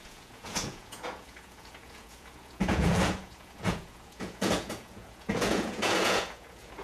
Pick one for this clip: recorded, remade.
remade